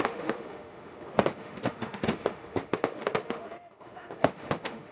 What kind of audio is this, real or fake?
fake